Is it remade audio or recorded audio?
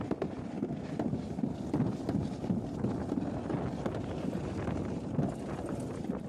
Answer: recorded